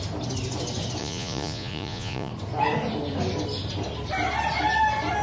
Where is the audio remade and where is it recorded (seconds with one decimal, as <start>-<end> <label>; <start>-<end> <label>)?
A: 0.0-1.0 recorded; 1.0-2.3 remade; 2.3-5.2 recorded